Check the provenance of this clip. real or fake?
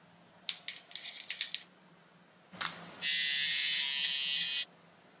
real